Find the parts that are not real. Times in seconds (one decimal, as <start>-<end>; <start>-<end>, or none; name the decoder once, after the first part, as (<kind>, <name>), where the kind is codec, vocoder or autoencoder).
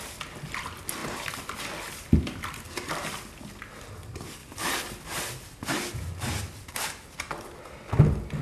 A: 1.0-2.9 (vocoder, BigVGAN v2); 4.4-5.7